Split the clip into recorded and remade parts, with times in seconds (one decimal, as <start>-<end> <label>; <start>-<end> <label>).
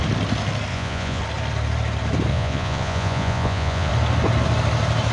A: 0.0-0.7 recorded; 0.7-1.2 remade; 1.2-2.3 recorded; 2.3-3.9 remade; 3.9-5.1 recorded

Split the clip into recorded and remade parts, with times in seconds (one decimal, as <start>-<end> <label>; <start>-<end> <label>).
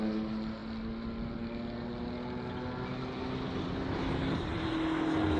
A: 0.0-5.4 recorded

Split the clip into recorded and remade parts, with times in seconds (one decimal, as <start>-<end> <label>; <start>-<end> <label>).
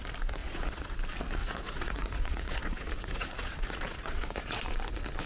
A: 0.0-0.4 recorded; 0.4-0.9 remade; 0.9-1.4 recorded; 1.4-4.6 remade; 4.6-5.3 recorded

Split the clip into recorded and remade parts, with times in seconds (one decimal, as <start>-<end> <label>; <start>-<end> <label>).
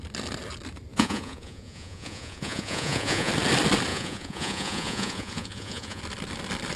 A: 0.0-0.9 recorded; 0.9-3.3 remade; 3.3-3.9 recorded; 3.9-6.0 remade; 6.0-6.8 recorded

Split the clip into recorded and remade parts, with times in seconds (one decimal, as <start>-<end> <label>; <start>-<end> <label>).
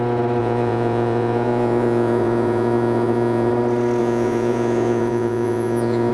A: 0.0-0.4 recorded; 0.4-3.5 remade; 3.5-4.0 recorded; 4.0-6.1 remade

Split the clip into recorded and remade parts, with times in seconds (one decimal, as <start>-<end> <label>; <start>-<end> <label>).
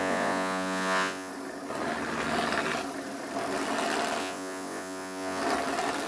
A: 0.0-1.3 remade; 1.3-4.2 recorded; 4.2-5.4 remade; 5.4-6.1 recorded